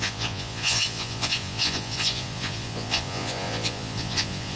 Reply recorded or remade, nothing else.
remade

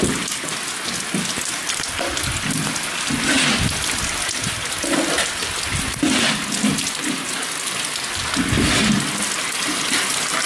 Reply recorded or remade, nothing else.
recorded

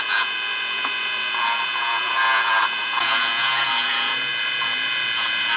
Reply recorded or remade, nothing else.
remade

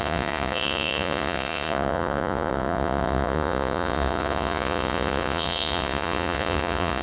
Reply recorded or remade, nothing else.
remade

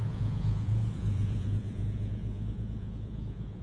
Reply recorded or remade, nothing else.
remade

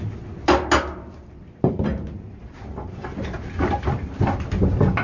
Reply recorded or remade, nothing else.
recorded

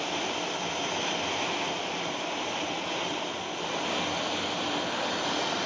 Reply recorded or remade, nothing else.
recorded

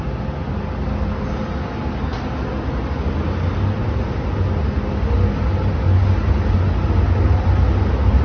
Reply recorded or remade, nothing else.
recorded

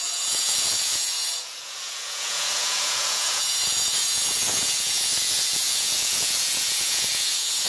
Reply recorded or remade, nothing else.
remade